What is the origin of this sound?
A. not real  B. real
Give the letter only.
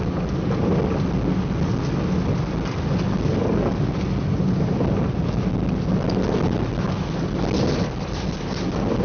B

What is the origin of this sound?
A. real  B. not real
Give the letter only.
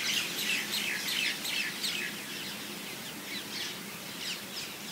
A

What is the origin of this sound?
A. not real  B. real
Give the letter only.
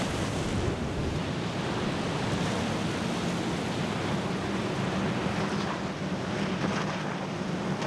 B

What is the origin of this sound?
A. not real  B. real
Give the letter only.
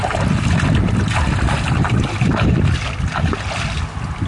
B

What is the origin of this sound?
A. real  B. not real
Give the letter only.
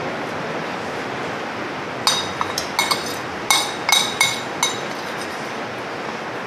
A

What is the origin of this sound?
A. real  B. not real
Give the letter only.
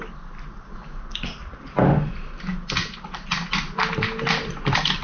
A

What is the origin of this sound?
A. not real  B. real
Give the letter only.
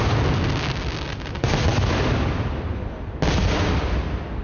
B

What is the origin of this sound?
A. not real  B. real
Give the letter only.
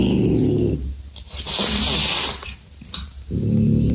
B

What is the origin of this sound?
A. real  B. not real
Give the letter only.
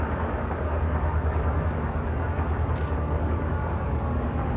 B